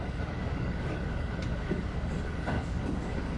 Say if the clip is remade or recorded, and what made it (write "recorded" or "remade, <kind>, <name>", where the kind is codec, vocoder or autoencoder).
remade, codec, DAC